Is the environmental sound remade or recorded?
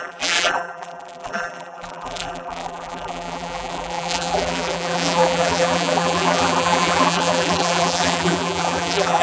remade